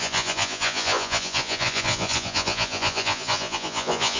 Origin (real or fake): fake